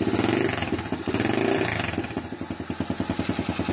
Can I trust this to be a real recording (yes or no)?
yes